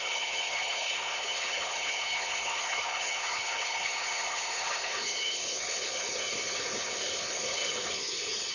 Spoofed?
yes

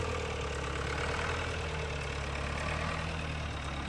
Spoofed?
no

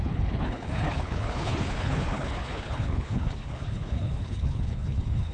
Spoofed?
yes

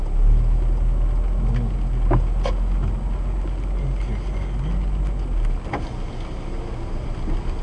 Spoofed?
no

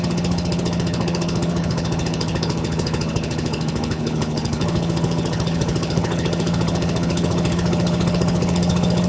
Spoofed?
yes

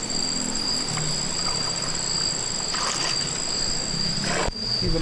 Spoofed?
no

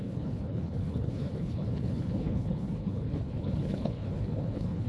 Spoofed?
yes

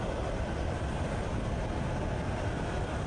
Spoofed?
no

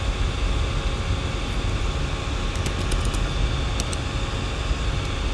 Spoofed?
no